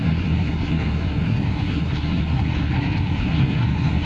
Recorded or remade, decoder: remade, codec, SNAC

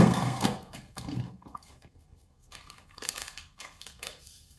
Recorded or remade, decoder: remade, codec, SNAC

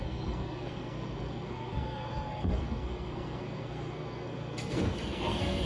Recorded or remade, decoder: remade, codec, SNAC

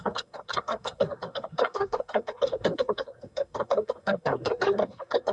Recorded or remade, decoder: remade, codec, SNAC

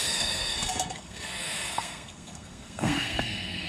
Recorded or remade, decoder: remade, codec, SNAC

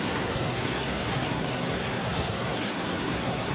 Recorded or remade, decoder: remade, codec, SNAC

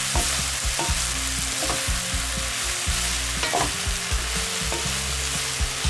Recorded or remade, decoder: recorded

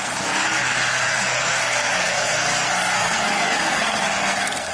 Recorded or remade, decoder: remade, codec, SNAC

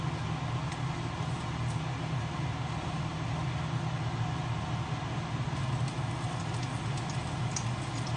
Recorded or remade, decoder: recorded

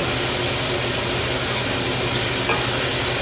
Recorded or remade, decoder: recorded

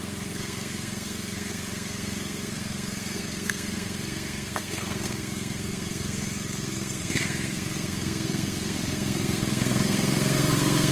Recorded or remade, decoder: remade, codec, SNAC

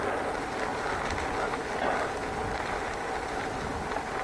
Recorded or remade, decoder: recorded